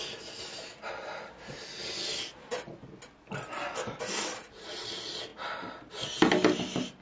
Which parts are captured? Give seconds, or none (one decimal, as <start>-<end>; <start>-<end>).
0.0-7.0